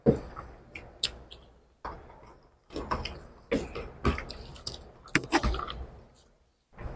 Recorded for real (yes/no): yes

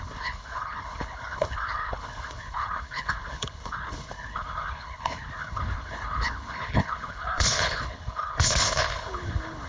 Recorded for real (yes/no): no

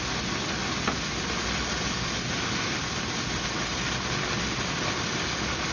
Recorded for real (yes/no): yes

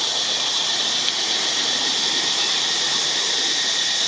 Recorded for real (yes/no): yes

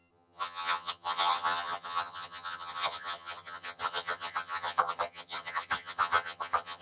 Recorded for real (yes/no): no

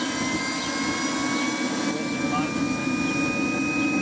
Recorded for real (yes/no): yes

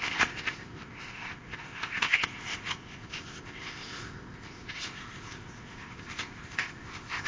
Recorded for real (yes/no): no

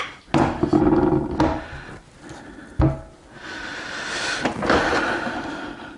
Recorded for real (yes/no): yes